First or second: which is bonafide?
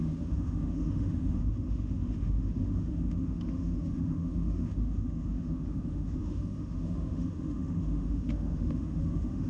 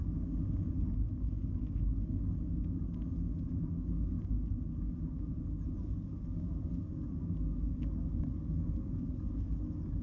second